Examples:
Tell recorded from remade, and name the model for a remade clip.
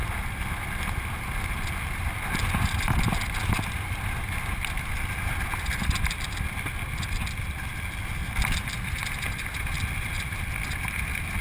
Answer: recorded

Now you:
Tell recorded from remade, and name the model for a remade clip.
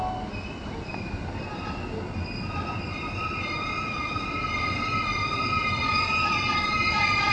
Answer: recorded